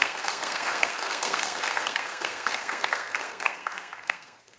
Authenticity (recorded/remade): remade